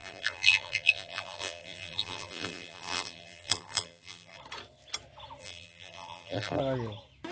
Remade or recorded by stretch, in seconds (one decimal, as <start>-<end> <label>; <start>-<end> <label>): 0.0-4.4 remade; 4.4-5.4 recorded; 5.4-6.6 remade; 6.6-7.3 recorded